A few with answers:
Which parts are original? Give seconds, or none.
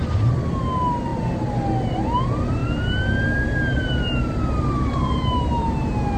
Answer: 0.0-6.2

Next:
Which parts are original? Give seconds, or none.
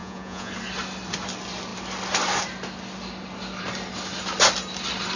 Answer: 0.5-5.2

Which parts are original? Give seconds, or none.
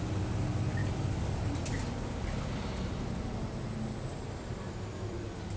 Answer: 0.0-5.6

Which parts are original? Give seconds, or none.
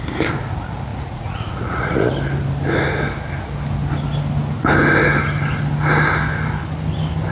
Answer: 0.0-0.9; 2.1-7.3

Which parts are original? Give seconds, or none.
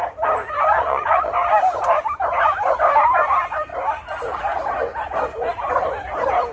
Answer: 0.0-0.7; 1.3-6.5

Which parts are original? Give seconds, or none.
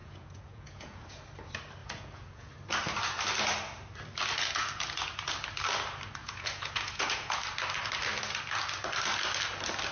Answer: 1.2-1.8; 2.5-6.2; 7.4-9.9